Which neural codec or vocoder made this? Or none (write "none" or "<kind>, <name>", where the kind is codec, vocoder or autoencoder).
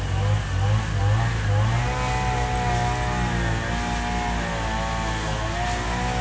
none